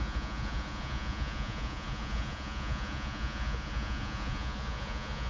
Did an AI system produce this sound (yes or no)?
yes